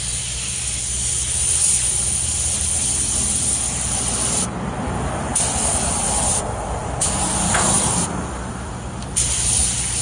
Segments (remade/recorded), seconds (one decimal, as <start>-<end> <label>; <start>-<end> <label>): 0.0-10.0 recorded